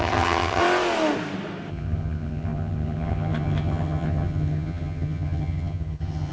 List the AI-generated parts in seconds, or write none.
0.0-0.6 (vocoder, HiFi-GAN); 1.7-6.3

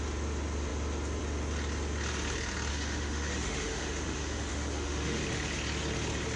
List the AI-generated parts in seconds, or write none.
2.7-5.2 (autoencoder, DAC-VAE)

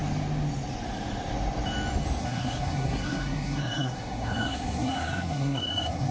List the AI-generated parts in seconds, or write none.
2.2-6.1 (codec, SNAC)